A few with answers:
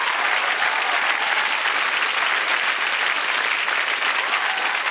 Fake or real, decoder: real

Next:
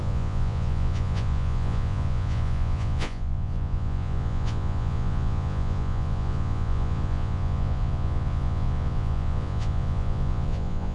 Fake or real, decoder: fake, vocoder, Vocos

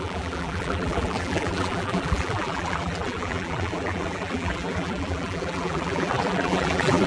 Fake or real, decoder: fake, vocoder, BigVGAN v2